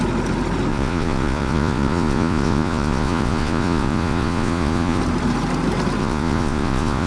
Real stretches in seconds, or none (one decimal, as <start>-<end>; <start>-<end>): 0.0-0.7; 5.0-6.0